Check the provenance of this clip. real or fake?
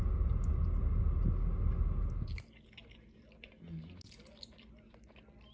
real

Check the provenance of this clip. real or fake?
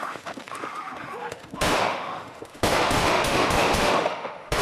fake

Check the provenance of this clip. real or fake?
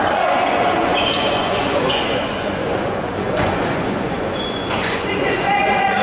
fake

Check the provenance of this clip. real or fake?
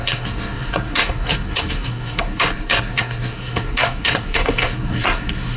fake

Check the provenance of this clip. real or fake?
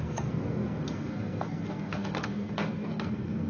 fake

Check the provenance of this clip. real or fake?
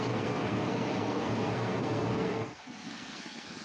fake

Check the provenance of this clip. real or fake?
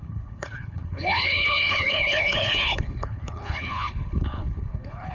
fake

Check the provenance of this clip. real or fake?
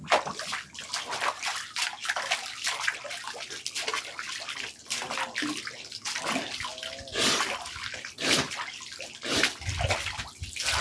real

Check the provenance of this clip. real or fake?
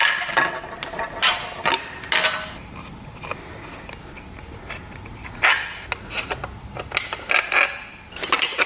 real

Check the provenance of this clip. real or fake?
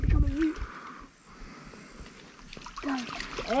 real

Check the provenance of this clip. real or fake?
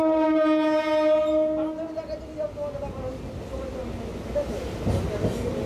real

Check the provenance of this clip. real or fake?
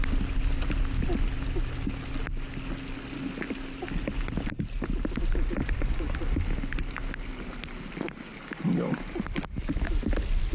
real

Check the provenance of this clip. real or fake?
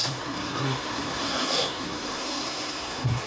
fake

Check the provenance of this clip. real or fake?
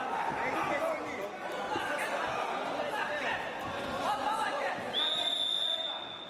real